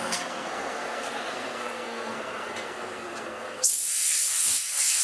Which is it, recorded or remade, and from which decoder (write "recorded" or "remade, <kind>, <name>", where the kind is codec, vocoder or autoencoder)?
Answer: remade, codec, SNAC